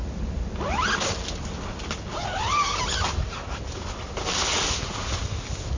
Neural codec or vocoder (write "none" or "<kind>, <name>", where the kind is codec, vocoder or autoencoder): none